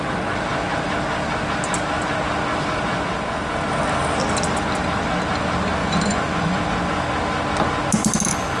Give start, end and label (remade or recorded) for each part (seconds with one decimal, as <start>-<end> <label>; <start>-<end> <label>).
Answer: 0.0-5.8 recorded; 5.8-6.6 remade; 6.6-8.6 recorded